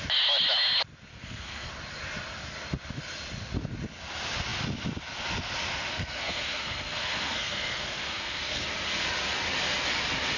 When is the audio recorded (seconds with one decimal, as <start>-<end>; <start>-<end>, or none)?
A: 0.0-1.1; 1.7-5.9; 8.6-10.4